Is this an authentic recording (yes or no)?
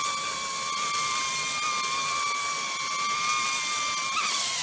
yes